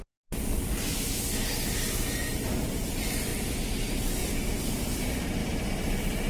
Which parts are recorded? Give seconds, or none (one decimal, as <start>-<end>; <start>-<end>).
0.0-4.2; 5.0-5.4